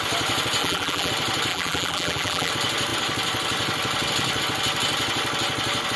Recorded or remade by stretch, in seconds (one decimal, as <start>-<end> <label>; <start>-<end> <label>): 0.0-0.6 recorded; 0.6-1.1 remade; 1.1-1.5 recorded; 1.5-2.5 remade; 2.5-6.0 recorded

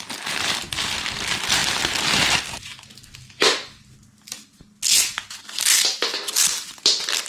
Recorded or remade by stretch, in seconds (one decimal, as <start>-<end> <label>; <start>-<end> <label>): 0.0-7.3 recorded

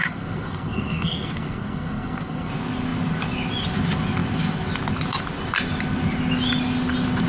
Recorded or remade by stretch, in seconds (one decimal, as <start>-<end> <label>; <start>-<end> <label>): 0.0-2.5 remade; 2.5-7.3 recorded

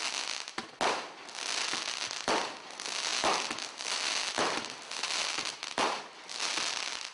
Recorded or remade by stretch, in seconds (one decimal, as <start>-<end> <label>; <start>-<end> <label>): 0.0-7.1 recorded

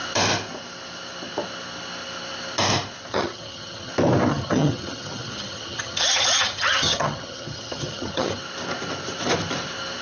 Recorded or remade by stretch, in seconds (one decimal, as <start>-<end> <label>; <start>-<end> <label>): 0.0-3.1 recorded; 3.1-3.9 remade; 3.9-4.3 recorded; 4.3-8.4 remade; 8.4-10.0 recorded

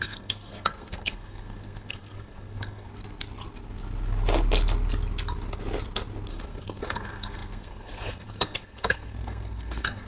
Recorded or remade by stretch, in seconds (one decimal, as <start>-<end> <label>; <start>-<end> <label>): 0.0-2.9 remade; 2.9-6.3 recorded; 6.3-10.1 remade

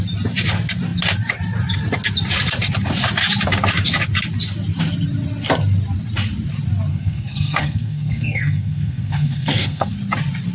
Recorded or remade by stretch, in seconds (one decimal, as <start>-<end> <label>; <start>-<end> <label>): 0.0-6.9 recorded; 6.9-9.9 remade; 9.9-10.5 recorded

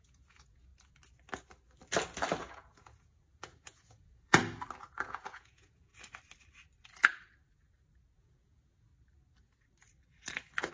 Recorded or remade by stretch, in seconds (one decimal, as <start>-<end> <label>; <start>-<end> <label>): 0.0-0.7 remade; 0.7-2.4 recorded; 2.4-4.4 remade; 4.4-5.0 recorded; 5.0-5.9 remade; 5.9-8.2 recorded; 8.2-8.9 remade; 8.9-10.7 recorded